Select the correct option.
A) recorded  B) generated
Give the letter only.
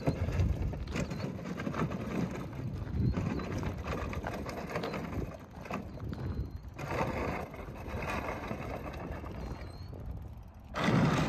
A